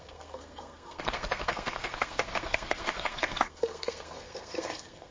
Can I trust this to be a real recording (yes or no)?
no